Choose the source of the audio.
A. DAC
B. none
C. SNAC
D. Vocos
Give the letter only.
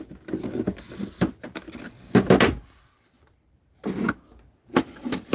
B